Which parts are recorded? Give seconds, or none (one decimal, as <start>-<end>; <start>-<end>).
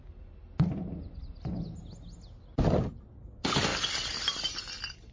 0.0-5.1